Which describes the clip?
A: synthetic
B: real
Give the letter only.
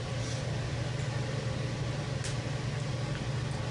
B